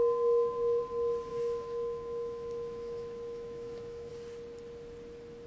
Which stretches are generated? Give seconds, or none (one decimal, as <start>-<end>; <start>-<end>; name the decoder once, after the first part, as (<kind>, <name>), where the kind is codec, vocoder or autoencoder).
0.0-0.8 (autoencoder, DAC-VAE); 1.3-4.1